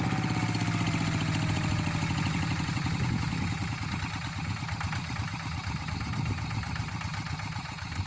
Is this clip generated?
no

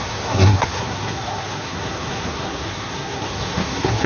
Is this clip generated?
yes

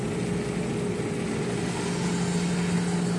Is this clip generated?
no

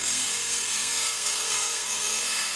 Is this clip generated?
yes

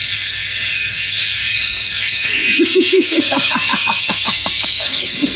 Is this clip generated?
yes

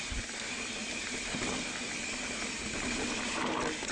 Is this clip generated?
no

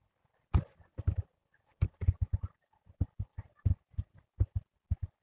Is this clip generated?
no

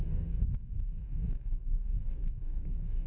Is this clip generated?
yes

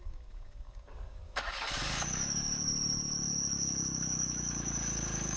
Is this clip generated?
yes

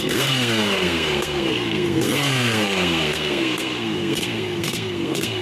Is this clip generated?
yes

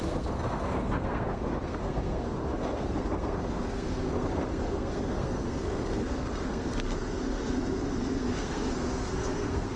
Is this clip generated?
yes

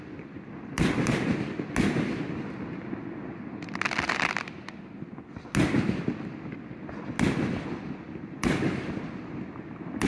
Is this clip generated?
no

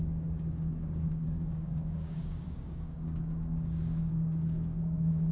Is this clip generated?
yes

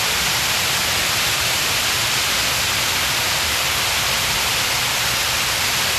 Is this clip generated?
yes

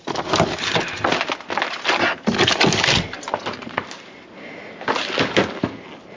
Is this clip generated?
no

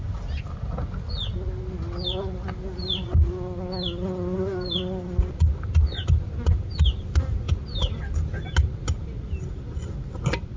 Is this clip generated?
no